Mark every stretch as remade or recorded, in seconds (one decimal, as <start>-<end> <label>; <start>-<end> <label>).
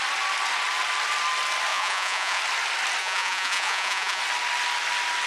0.0-1.7 recorded; 1.7-2.4 remade; 2.4-3.0 recorded; 3.0-4.2 remade; 4.2-5.3 recorded